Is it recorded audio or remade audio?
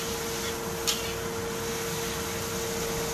recorded